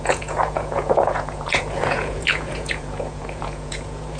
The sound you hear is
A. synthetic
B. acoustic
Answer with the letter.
A